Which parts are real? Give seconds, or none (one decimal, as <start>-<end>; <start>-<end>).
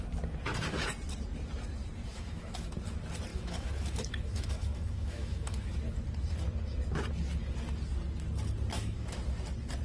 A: 0.0-2.1; 2.7-3.3; 5.7-8.7; 9.2-9.8